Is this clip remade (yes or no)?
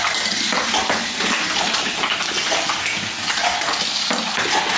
no